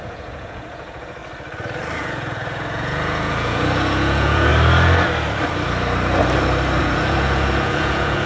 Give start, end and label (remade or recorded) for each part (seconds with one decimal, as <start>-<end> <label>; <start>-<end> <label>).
0.0-1.2 remade; 1.2-2.0 recorded; 2.0-4.5 remade; 4.5-6.8 recorded; 6.8-8.3 remade